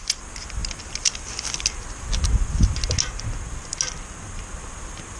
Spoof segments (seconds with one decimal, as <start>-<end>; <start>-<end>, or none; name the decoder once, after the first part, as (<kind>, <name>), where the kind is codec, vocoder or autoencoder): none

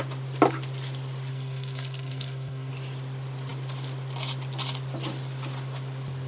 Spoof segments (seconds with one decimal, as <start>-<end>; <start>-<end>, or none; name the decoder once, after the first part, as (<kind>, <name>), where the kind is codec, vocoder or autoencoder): 1.3-2.7 (codec, SNAC)

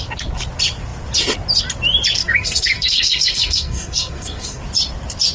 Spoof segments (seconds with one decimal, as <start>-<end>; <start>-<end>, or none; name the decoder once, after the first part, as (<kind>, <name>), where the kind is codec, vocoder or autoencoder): 2.2-4.6 (codec, SNAC)